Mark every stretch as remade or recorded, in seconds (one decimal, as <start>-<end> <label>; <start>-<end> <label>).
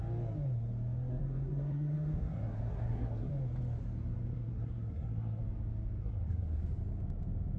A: 0.0-1.1 recorded; 1.1-3.3 remade; 3.3-4.3 recorded; 4.3-5.4 remade; 5.4-6.0 recorded; 6.0-6.6 remade; 6.6-7.6 recorded